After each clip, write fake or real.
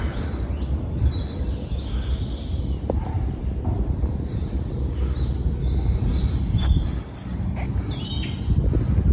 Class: real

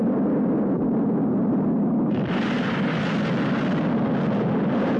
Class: real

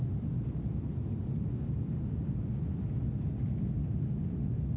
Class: real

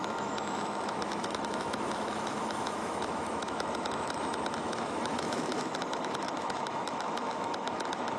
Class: fake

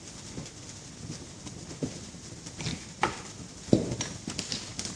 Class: real